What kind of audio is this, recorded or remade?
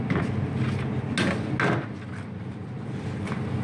recorded